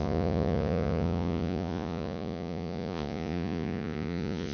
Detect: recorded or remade remade